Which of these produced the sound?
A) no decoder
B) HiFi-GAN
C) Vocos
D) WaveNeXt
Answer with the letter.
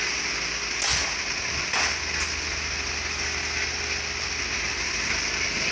A